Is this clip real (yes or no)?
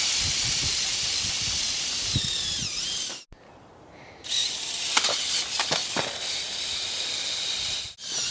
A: yes